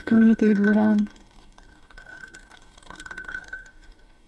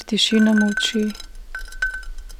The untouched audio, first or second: second